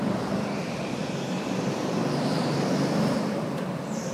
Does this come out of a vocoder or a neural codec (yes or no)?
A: yes